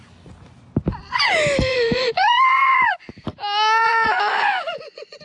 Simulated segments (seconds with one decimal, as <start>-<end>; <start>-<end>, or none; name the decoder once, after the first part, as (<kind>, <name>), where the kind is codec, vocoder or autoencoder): 1.7-3.1 (vocoder, Vocos); 3.8-5.2